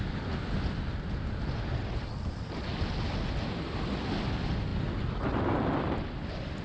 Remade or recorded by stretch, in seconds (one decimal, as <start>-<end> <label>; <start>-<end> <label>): 0.0-6.6 recorded